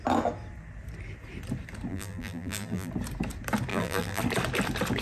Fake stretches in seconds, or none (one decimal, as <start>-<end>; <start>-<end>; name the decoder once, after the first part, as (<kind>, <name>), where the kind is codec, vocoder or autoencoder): 1.9-2.9 (vocoder, BigVGAN v2); 3.7-4.2